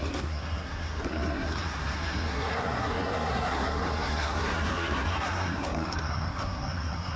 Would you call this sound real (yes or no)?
no